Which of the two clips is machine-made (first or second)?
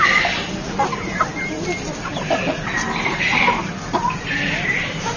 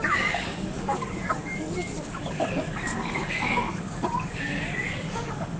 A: second